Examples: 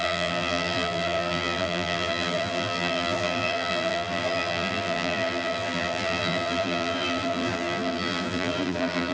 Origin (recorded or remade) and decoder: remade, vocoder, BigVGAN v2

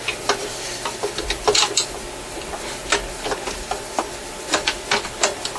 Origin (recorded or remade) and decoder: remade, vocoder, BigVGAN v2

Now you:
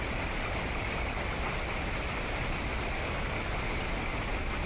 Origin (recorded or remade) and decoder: recorded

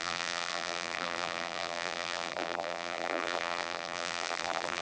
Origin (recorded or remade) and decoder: remade, vocoder, BigVGAN v2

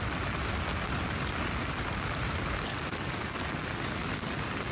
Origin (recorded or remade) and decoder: recorded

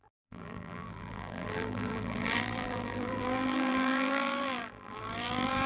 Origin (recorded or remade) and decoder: remade, vocoder, BigVGAN v2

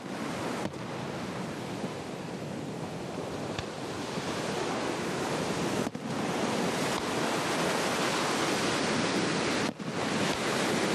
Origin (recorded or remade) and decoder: recorded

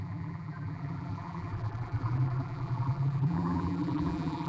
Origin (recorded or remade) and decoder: remade, vocoder, BigVGAN v2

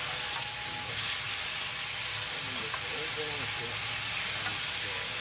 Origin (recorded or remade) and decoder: recorded